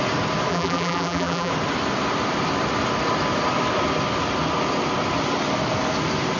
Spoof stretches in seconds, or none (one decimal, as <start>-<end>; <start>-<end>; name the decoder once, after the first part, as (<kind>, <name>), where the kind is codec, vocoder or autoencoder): 0.5-1.5 (vocoder, BigVGAN v2)